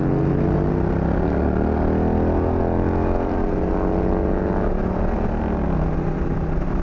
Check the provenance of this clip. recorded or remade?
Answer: recorded